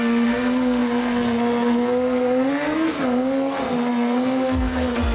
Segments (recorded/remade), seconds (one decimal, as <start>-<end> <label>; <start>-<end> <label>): 0.0-5.1 remade